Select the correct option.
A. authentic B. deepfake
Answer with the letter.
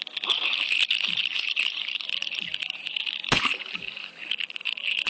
A